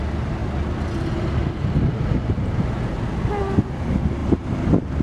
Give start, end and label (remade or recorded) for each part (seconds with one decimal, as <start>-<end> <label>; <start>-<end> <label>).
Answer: 0.0-5.0 recorded